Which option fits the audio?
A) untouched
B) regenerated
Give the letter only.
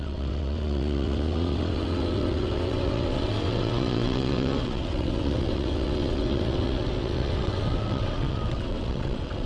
B